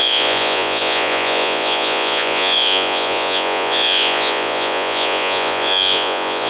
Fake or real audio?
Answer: fake